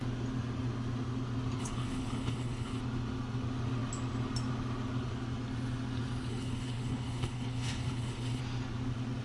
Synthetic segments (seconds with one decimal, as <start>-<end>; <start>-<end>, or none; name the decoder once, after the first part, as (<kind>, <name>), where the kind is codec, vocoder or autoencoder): 1.6-2.8 (codec, HILCodec); 6.3-8.4